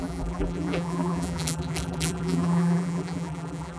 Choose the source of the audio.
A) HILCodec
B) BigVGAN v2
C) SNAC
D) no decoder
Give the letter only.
B